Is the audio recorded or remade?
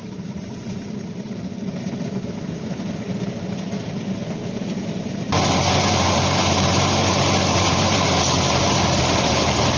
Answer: remade